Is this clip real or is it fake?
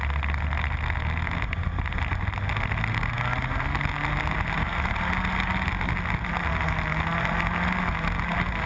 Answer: real